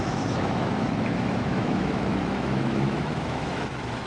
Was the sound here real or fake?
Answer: fake